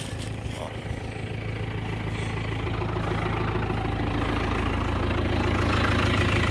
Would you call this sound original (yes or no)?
yes